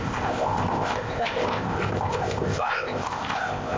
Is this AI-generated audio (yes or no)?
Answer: yes